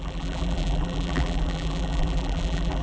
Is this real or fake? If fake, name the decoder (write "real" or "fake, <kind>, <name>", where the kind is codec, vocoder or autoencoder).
fake, vocoder, BigVGAN v2